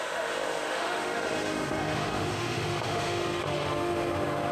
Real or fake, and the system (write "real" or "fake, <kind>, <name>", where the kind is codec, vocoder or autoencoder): fake, autoencoder, DAC-VAE